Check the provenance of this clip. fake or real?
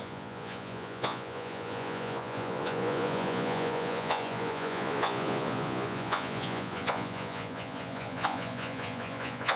fake